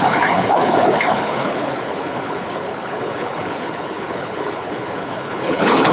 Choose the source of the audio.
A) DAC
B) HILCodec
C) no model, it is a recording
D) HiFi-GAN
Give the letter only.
B